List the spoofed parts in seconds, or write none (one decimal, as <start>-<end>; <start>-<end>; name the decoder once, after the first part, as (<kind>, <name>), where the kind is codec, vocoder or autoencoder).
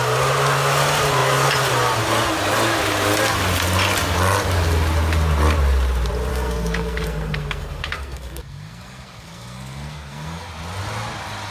6.3-10.5 (codec, SNAC)